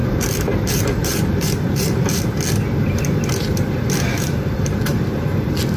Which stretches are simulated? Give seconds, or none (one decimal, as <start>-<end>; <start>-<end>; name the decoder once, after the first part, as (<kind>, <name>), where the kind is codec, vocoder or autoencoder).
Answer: 0.0-2.2 (vocoder, BigVGAN v2); 4.1-4.8